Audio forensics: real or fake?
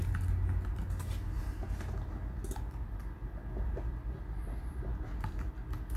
real